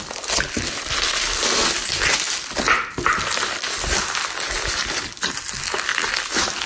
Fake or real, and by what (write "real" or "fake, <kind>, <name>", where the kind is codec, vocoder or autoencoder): real